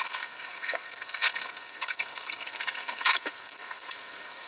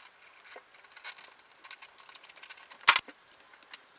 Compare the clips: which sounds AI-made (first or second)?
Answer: first